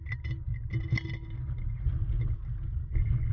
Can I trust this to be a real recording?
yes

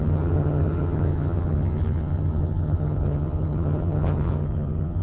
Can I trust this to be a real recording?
no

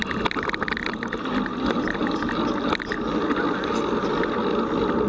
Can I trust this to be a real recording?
yes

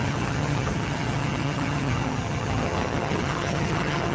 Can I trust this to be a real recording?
no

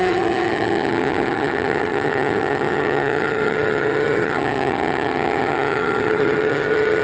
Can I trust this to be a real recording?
no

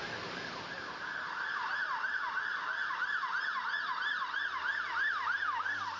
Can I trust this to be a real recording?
yes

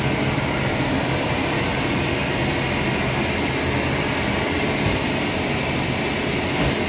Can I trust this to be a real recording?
yes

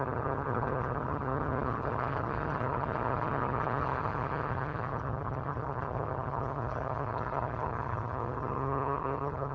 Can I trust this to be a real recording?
no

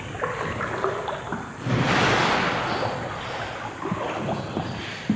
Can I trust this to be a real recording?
yes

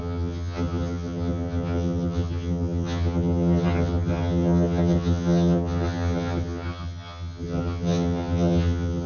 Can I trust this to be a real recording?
no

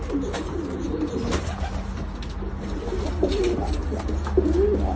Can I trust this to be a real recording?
yes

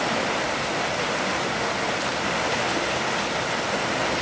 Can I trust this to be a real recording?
yes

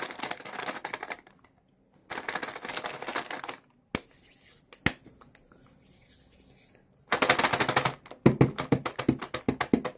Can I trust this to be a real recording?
yes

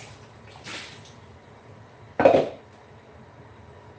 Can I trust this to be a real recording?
yes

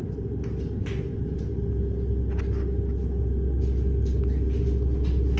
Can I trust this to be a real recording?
yes